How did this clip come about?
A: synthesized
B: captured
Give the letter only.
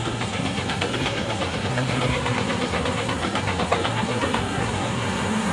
A